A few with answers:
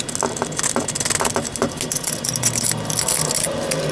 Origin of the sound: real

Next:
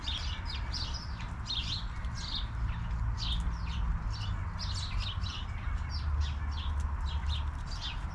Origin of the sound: real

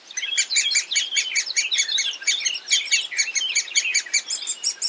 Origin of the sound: real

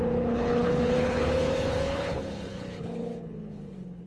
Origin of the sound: fake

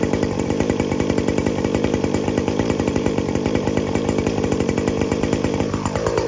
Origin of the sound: fake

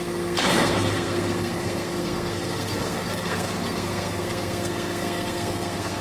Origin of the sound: fake